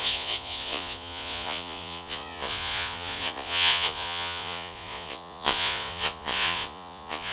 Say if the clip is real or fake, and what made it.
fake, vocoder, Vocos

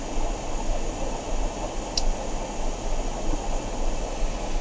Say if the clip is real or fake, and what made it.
real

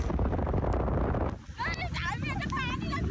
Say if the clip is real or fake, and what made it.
real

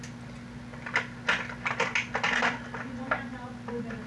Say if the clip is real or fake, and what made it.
real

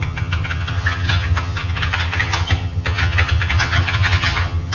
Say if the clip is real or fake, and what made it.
fake, vocoder, HiFi-GAN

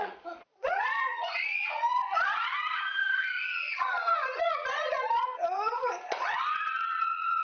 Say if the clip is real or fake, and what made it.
fake, vocoder, Vocos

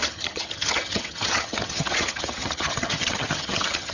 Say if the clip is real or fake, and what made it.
fake, vocoder, HiFi-GAN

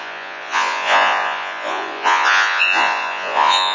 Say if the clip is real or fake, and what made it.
fake, vocoder, Vocos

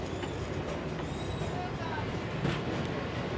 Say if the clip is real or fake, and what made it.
real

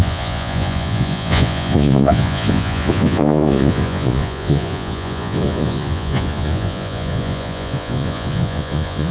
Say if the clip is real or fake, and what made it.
fake, vocoder, Vocos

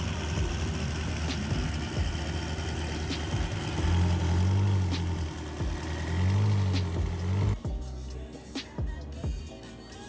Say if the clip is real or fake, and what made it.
real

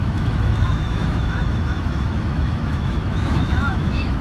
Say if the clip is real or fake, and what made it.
fake, autoencoder, DAC-VAE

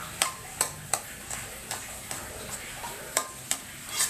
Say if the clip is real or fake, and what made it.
fake, vocoder, BigVGAN v2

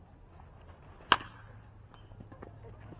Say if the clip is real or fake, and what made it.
real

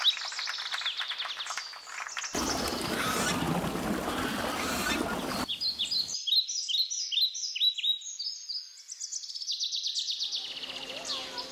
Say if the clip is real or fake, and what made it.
real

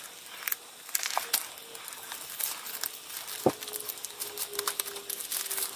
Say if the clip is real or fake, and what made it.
real